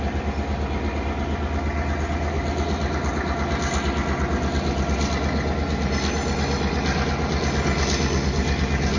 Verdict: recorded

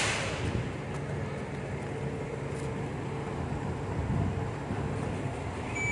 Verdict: recorded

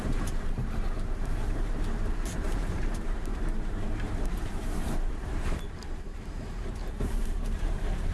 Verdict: remade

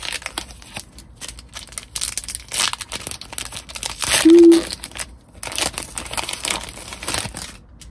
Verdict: recorded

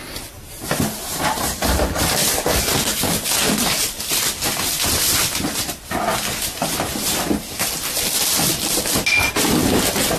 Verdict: recorded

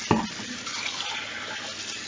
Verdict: recorded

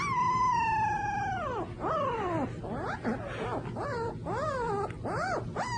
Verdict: recorded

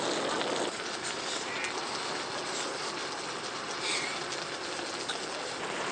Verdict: recorded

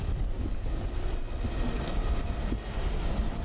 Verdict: recorded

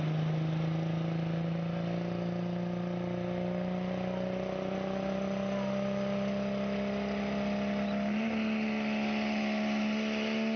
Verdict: recorded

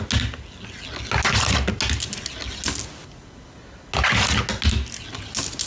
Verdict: recorded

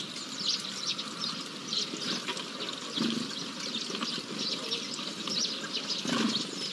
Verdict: recorded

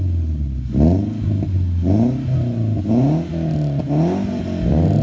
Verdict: recorded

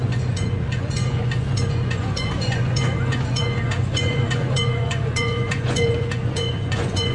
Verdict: remade